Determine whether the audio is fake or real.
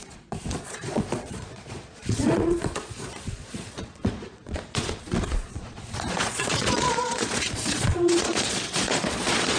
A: fake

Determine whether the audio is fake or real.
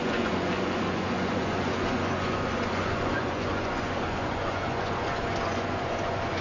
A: fake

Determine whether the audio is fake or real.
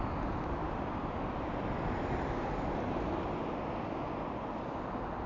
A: real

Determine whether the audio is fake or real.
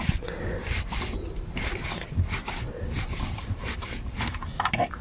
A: real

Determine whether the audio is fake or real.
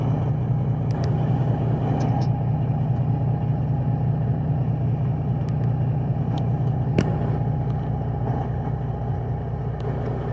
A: real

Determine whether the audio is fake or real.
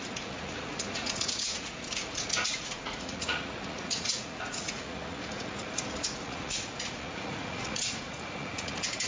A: fake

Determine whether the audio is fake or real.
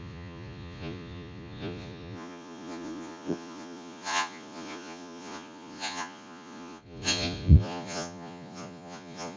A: fake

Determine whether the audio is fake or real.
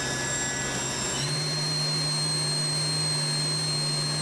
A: real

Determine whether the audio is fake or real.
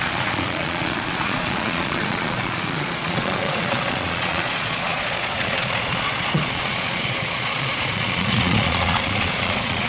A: fake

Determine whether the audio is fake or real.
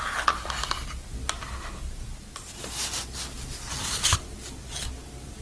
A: real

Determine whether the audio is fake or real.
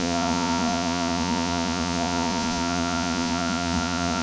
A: fake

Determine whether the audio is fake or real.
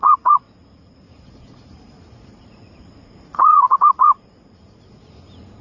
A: fake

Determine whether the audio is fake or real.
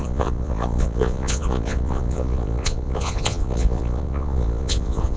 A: fake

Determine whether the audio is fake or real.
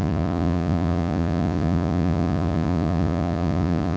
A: fake